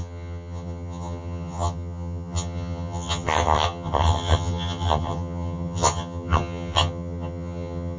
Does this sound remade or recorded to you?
remade